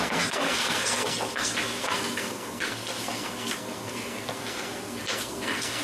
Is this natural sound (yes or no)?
no